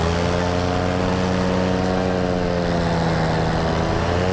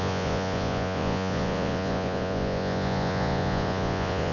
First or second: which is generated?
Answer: second